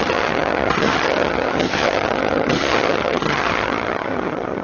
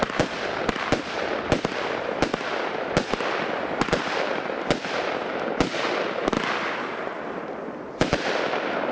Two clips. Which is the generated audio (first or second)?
first